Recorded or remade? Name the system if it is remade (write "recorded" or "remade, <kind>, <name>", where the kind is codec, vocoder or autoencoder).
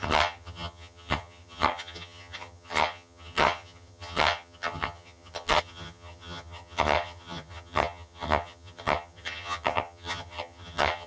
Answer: remade, vocoder, HiFi-GAN